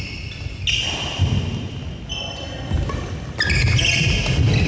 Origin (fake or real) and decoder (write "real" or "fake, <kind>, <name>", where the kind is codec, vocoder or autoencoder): real